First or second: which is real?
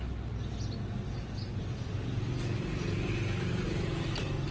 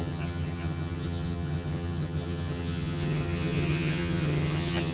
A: first